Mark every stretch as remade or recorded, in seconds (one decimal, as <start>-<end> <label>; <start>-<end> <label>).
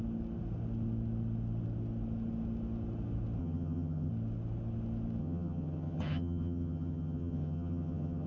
0.0-3.4 recorded; 3.4-4.1 remade; 4.1-5.2 recorded; 5.2-8.3 remade